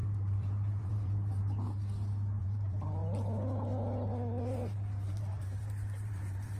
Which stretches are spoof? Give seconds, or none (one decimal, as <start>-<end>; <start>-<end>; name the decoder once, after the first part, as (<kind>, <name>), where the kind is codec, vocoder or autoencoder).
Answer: 0.0-1.4 (vocoder, BigVGAN v2); 2.4-3.0; 4.4-6.6